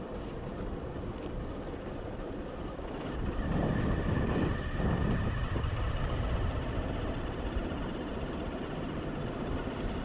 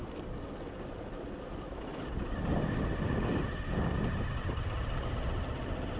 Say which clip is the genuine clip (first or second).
second